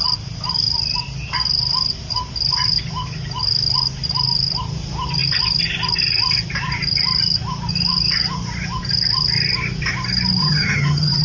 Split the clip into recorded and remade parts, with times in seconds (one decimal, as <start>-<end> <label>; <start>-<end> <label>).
0.0-10.4 recorded; 10.4-11.2 remade